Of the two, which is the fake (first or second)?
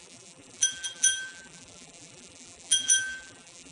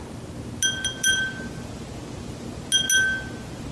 first